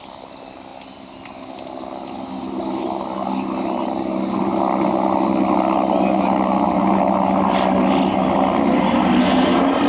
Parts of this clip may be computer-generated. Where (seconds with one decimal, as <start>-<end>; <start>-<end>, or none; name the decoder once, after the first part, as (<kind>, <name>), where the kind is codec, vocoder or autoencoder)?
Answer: none

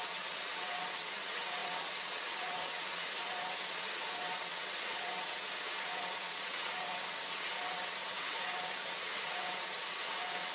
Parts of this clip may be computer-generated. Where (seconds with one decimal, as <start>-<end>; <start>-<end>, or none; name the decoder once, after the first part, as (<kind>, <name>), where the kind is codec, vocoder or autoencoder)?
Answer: 0.0-10.5 (vocoder, WaveNeXt)

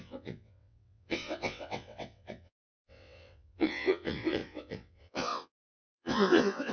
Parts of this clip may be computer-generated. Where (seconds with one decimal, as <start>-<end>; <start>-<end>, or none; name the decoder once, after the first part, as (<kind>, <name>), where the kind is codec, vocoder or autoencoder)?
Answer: 0.0-6.7 (vocoder, WaveNeXt)

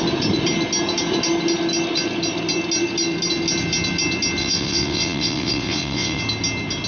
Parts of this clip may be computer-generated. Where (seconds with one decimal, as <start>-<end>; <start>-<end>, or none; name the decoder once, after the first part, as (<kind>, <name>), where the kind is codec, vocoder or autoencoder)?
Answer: 4.4-6.2 (vocoder, WaveNeXt)